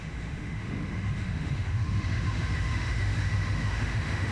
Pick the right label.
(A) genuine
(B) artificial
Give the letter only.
B